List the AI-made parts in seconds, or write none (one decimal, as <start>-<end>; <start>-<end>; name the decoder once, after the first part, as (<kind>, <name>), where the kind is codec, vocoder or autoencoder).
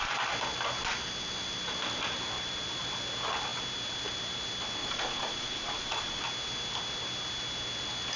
4.8-6.2 (vocoder, Vocos)